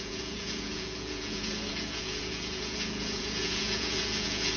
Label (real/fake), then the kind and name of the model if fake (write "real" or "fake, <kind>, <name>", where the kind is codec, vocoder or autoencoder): fake, vocoder, Vocos